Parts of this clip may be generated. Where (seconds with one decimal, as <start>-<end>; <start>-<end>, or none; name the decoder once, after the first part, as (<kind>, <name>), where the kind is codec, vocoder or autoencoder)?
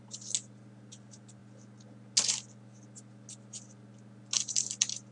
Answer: none